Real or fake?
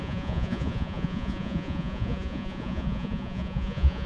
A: fake